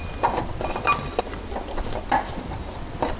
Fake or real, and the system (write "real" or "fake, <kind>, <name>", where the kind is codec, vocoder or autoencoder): real